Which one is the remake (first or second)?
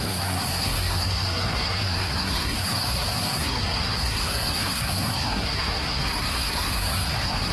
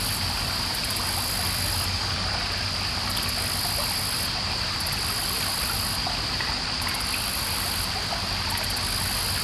first